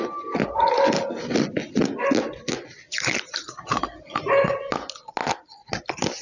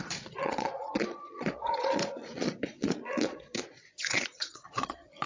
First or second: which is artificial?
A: second